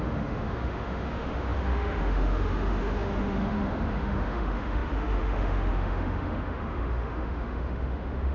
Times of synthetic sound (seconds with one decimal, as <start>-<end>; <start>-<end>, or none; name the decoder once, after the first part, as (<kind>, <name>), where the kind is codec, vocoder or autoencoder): 0.0-8.3 (autoencoder, DAC-VAE)